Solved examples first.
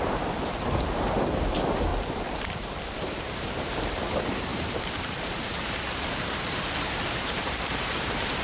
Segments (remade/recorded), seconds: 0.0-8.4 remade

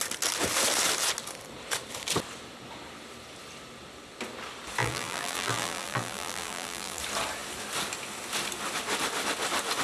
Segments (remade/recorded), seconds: 0.0-4.8 recorded; 4.8-7.0 remade; 7.0-9.8 recorded

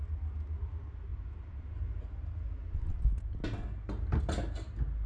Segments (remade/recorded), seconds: 0.0-5.1 recorded

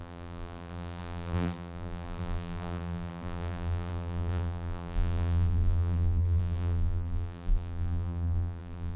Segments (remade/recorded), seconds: 0.0-9.0 remade

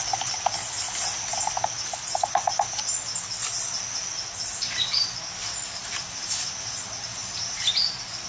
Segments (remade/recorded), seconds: 0.0-8.3 recorded

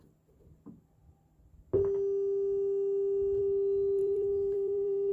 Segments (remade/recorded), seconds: 0.0-4.0 recorded; 4.0-5.1 remade